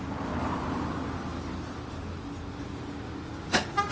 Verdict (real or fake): real